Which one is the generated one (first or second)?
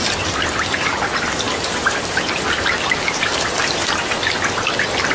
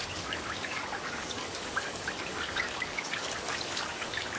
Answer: second